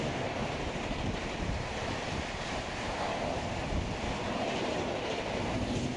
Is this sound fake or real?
real